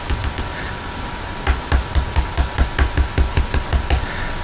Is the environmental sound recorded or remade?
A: recorded